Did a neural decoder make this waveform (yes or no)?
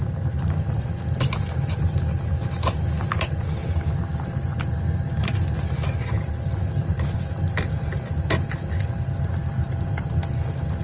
no